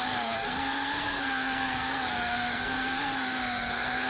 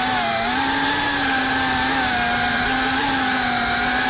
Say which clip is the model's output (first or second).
first